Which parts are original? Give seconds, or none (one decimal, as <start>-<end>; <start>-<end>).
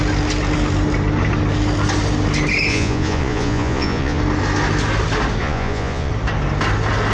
0.0-2.7; 4.2-5.4; 6.1-7.1